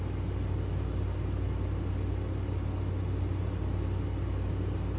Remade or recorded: recorded